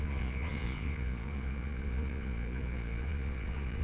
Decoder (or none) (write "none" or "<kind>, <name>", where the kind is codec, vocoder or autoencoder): vocoder, Vocos